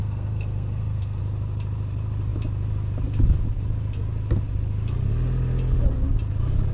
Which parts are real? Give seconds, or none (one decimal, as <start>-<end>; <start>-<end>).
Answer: 1.2-6.7